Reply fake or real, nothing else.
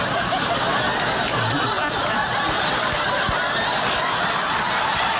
real